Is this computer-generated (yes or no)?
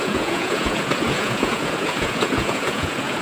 yes